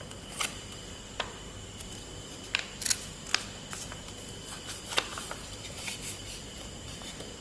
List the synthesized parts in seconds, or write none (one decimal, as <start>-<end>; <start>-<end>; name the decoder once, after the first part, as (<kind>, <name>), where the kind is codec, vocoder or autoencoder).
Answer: 5.1-7.4 (vocoder, BigVGAN v2)